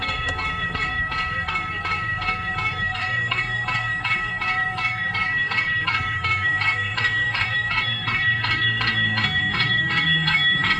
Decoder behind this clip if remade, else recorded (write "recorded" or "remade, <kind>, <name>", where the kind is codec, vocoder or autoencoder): remade, codec, SNAC